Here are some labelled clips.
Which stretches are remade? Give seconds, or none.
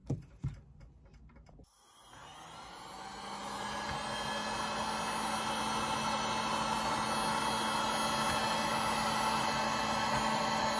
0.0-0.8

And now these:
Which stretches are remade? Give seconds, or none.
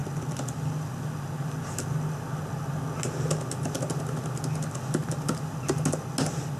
none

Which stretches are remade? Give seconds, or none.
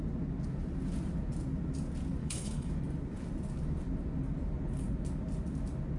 2.2-2.7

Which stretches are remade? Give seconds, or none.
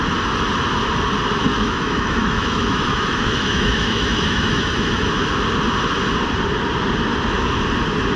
1.5-5.1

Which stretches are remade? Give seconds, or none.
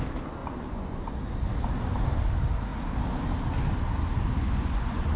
0.4-1.2; 4.4-5.2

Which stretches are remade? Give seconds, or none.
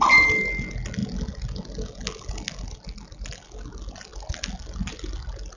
none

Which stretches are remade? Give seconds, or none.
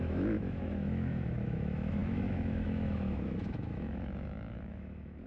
0.0-5.3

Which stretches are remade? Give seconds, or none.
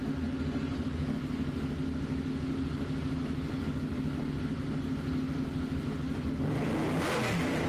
none